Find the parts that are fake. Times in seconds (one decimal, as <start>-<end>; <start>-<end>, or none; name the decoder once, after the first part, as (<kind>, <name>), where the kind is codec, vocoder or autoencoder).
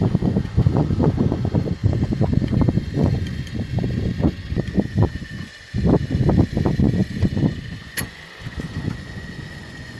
0.0-5.5 (vocoder, Vocos); 6.5-10.0